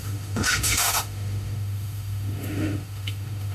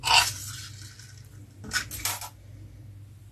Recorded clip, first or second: second